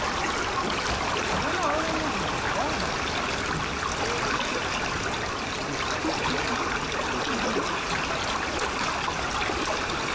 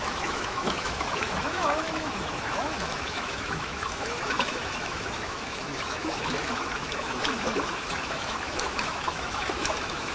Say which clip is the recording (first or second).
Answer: first